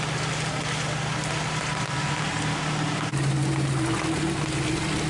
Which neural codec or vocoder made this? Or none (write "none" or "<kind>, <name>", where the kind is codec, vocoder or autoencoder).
none